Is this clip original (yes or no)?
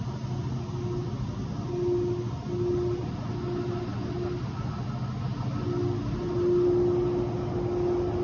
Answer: yes